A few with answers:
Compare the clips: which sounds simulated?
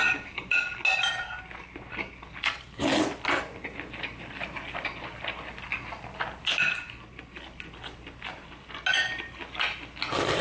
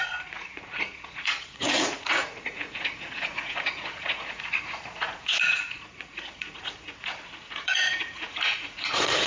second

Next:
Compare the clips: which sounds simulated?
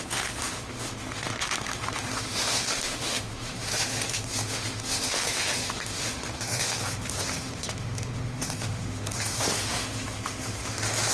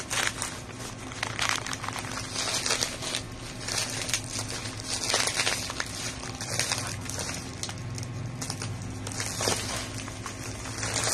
first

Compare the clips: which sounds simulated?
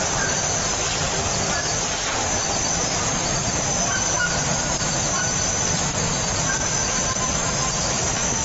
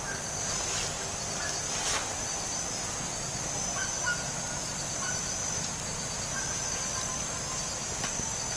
first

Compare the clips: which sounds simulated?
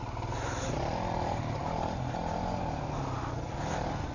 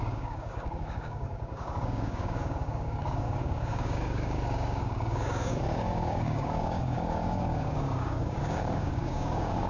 second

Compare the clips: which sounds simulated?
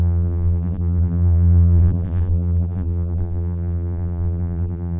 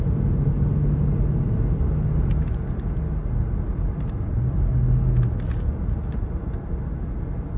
first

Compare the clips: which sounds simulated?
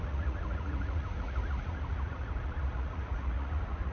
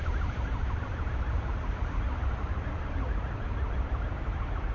first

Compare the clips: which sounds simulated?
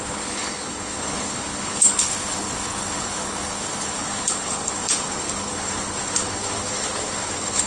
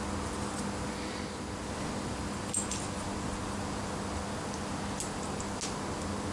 first